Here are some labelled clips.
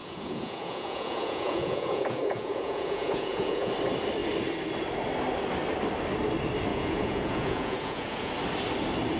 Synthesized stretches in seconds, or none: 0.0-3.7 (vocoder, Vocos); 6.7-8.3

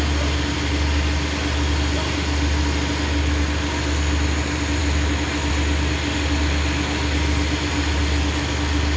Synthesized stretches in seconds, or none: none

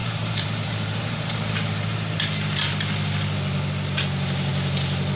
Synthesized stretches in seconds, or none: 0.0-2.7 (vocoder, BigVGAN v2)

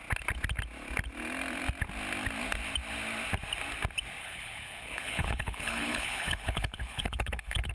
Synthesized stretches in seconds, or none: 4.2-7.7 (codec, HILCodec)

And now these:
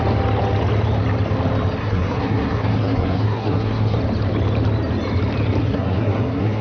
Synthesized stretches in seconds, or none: 1.8-4.0 (codec, SNAC); 5.6-6.6

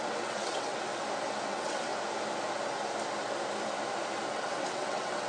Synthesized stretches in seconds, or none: 0.0-0.9 (vocoder, WaveNeXt); 1.5-1.9; 4.3-5.3